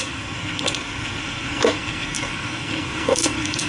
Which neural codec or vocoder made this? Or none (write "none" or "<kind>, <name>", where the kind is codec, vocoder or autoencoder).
codec, SNAC